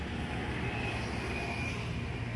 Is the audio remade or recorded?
recorded